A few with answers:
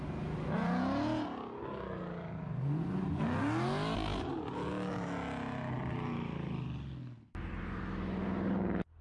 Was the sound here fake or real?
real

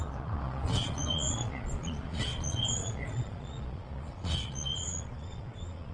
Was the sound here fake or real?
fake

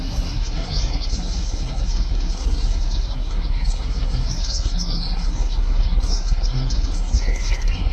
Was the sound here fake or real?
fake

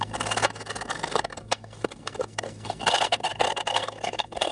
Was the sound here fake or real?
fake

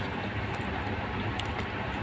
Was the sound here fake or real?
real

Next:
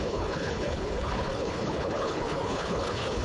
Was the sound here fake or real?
fake